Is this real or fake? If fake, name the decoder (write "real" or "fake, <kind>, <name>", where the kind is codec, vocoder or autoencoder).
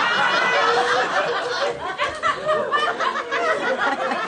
real